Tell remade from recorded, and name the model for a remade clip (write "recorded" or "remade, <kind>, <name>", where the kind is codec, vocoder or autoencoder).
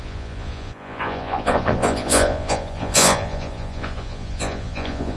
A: remade, vocoder, Vocos